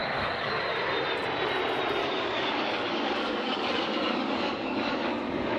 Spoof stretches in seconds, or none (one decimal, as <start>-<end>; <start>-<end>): 0.0-0.6; 2.0-5.6